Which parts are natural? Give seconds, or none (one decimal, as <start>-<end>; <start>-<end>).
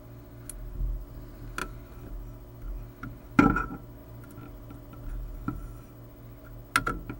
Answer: 0.0-7.2